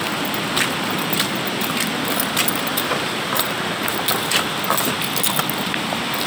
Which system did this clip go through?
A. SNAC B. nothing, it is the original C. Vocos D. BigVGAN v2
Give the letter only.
B